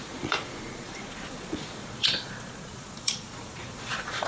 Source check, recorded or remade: remade